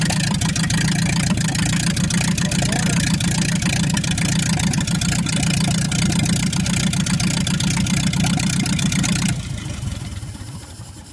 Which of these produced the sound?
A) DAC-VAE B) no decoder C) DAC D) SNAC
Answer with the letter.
B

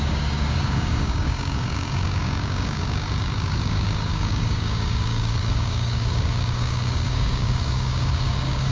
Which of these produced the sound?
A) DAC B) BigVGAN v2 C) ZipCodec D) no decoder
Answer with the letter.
A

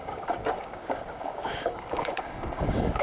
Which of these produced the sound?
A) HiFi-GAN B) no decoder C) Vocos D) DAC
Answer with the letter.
D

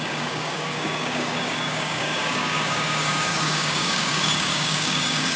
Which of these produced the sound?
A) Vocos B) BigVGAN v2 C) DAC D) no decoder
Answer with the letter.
C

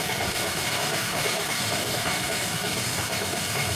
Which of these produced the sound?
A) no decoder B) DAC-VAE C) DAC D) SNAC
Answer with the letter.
C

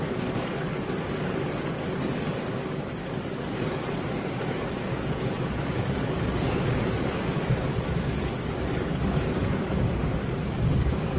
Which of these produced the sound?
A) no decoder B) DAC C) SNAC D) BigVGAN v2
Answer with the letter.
B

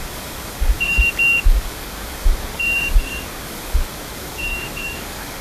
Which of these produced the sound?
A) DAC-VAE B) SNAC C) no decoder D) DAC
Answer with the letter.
D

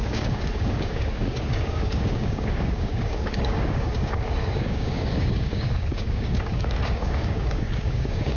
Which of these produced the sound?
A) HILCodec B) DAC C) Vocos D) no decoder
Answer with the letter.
B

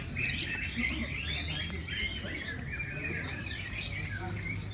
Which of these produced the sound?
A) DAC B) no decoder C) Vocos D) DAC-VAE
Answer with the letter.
B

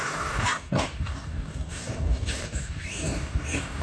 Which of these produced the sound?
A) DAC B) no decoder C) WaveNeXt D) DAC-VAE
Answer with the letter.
A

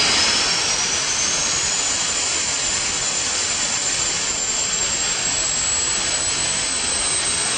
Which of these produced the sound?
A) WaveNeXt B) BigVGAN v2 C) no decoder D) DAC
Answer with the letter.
C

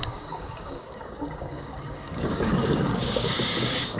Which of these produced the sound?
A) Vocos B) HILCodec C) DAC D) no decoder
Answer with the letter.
C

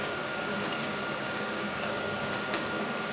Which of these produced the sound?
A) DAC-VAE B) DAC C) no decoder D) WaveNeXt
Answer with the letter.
B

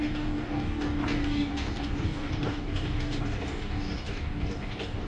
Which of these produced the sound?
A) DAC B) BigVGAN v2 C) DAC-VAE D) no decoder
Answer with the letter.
A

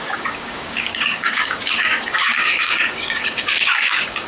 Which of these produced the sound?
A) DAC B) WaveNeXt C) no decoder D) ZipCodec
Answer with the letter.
A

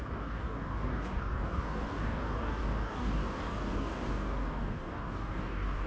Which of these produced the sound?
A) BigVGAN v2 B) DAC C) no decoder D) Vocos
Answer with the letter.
B